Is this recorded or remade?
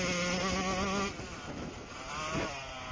recorded